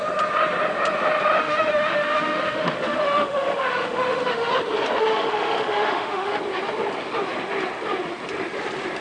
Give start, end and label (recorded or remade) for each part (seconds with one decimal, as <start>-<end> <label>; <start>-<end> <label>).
0.0-1.4 recorded; 1.4-4.5 remade; 4.5-5.1 recorded; 5.1-6.4 remade; 6.4-9.0 recorded